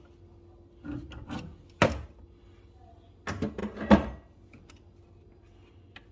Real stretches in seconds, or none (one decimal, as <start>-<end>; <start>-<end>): 0.0-6.1